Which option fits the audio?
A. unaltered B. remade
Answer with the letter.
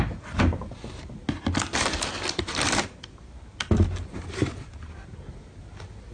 A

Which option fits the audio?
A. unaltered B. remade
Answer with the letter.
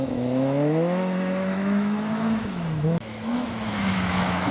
B